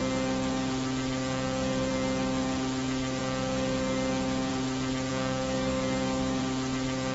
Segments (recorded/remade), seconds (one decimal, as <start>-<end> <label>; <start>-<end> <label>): 0.0-5.1 recorded; 5.1-6.4 remade; 6.4-7.1 recorded